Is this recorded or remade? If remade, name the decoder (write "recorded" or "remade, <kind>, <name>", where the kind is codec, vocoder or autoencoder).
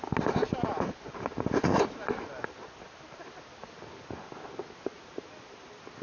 recorded